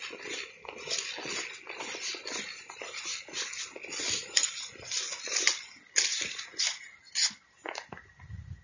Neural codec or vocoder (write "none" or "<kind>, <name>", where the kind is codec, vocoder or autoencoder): none